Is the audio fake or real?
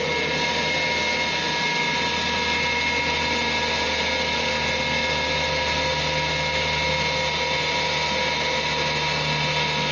real